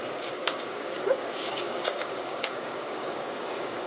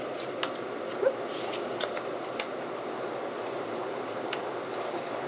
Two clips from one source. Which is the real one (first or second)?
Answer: second